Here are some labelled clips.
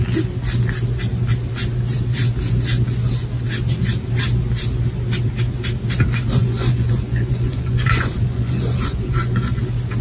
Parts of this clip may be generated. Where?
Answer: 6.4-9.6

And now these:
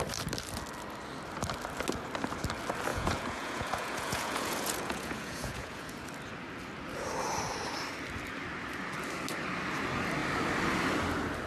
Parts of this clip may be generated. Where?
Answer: 2.9-6.0

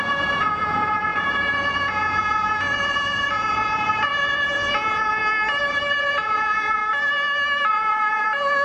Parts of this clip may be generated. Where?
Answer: 0.0-5.2; 6.0-6.8; 7.7-8.6

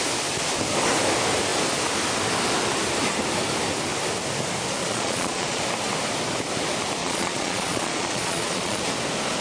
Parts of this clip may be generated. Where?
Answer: 4.8-5.6; 7.0-8.8

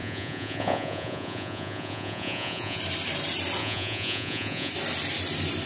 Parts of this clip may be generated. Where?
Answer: 0.0-2.8; 3.6-4.7

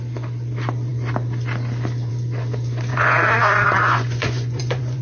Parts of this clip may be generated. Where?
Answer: 2.9-5.0